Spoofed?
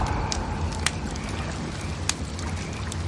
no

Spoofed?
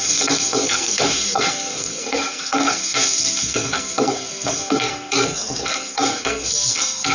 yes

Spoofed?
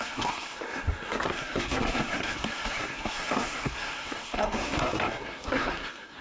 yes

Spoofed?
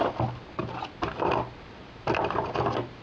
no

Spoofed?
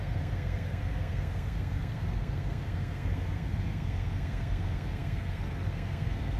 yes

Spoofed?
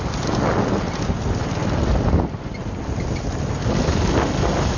no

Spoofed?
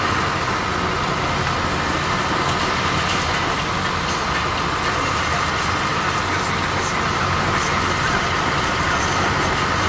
no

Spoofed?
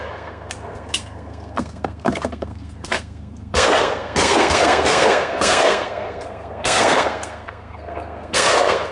yes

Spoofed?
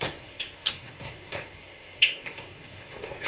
yes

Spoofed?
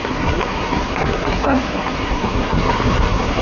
yes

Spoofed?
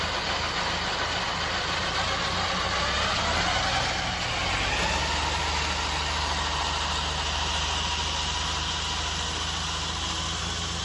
no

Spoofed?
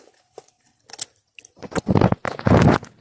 no